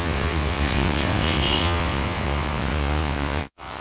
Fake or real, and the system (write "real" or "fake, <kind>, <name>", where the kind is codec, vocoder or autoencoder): fake, vocoder, WaveNeXt